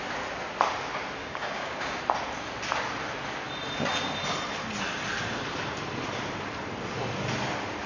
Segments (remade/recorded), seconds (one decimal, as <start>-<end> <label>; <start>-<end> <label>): 0.0-1.2 recorded; 1.2-2.0 remade; 2.0-7.9 recorded